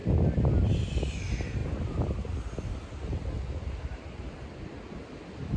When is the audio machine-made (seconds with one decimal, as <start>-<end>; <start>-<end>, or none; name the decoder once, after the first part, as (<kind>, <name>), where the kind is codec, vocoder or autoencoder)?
none